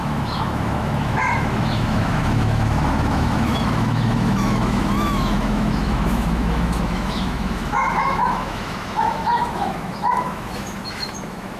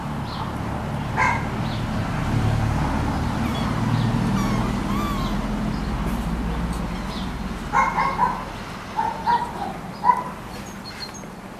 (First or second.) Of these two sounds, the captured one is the second